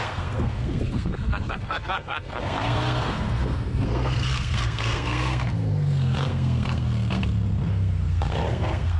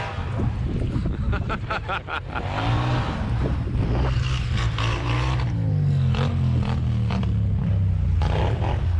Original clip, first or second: second